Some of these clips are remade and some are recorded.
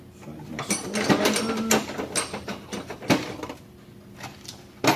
recorded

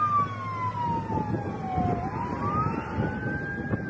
recorded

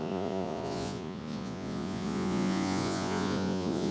remade